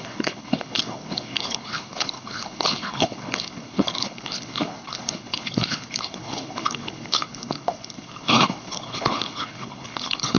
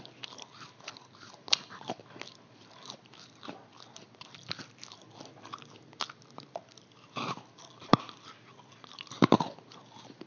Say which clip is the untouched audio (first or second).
second